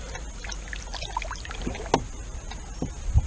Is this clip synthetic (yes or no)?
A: no